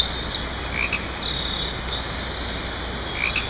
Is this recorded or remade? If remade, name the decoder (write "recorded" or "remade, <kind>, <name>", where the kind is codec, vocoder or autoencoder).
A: recorded